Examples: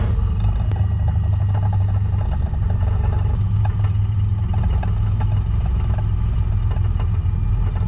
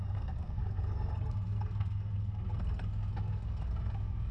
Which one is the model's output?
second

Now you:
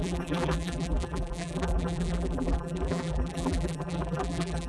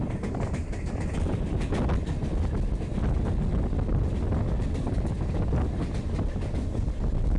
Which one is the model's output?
first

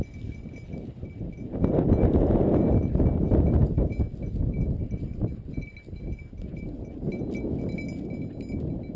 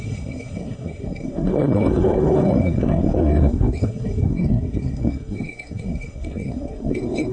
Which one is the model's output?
second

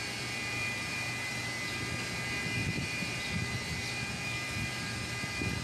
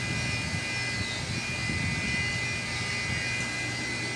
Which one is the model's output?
first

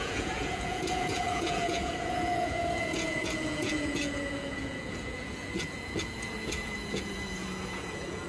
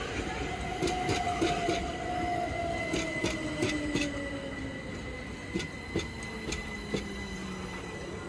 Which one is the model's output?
first